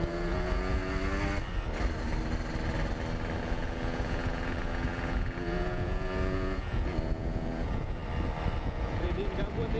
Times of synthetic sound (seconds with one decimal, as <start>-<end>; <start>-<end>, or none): 0.0-0.8; 3.4-8.0; 8.6-9.8